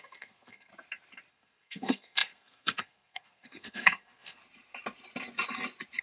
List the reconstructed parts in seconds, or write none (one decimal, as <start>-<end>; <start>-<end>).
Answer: 0.0-0.7; 1.3-4.4